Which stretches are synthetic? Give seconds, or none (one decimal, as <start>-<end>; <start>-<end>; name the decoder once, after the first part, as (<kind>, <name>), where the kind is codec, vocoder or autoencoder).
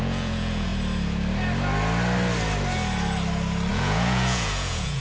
0.0-0.7 (vocoder, Vocos); 3.7-5.0